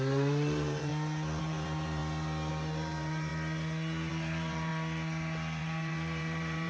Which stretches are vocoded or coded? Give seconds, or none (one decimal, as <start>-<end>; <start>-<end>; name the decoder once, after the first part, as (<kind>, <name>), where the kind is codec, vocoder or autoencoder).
0.0-0.9 (vocoder, BigVGAN v2); 1.4-2.0; 2.5-3.3; 4.1-4.7; 5.6-6.7